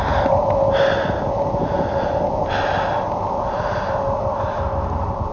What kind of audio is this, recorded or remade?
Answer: recorded